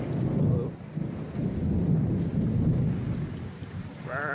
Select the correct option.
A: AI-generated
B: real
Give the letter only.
B